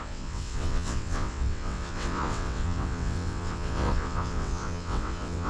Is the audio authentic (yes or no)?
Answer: no